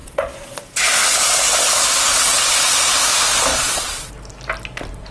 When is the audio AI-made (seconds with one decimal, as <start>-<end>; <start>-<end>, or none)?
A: 0.0-0.6; 2.1-3.0; 3.5-4.1

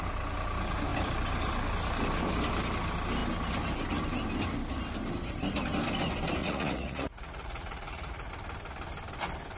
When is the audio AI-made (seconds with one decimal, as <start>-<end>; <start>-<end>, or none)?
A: 6.4-8.3

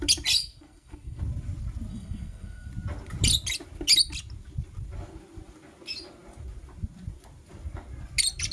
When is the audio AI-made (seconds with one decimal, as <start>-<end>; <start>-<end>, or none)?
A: 0.4-1.2; 1.9-2.7

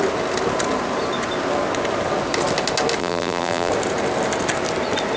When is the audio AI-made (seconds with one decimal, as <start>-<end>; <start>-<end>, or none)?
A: 3.0-3.7

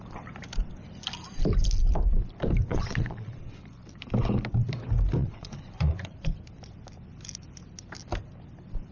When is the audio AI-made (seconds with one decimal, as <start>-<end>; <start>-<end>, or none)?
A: 2.7-3.3; 5.2-6.3

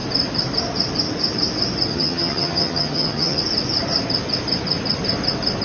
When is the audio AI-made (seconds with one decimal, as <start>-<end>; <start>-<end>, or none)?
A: 1.9-3.4

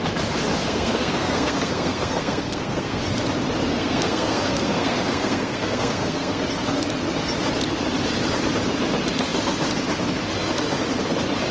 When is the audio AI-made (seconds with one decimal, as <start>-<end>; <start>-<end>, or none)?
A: 0.6-3.0; 3.7-6.4

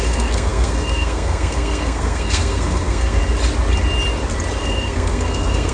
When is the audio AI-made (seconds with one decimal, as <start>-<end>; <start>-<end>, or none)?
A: 0.0-3.2; 4.6-5.7